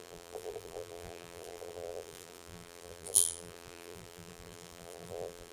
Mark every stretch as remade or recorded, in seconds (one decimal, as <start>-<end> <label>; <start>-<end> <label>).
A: 0.0-5.5 remade